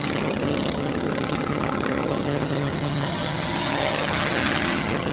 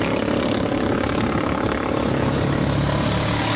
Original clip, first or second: second